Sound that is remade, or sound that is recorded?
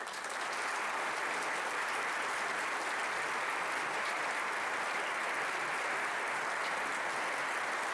recorded